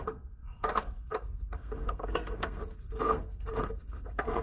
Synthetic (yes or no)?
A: yes